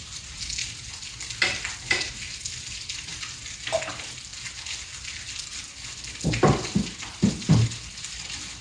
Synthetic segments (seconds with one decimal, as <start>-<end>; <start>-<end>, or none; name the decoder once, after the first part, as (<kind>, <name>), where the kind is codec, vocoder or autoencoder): none